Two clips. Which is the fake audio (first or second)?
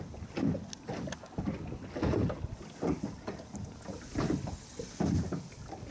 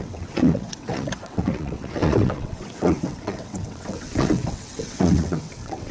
second